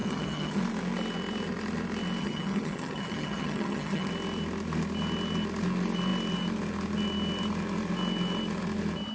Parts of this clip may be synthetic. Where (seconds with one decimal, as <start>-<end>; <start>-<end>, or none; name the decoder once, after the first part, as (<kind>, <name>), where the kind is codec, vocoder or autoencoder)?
0.0-0.6 (vocoder, HiFi-GAN); 2.2-4.1